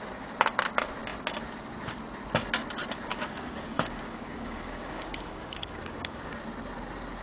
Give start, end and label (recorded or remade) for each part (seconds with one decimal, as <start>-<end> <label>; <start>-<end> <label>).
0.0-3.1 recorded; 3.1-6.4 remade; 6.4-7.2 recorded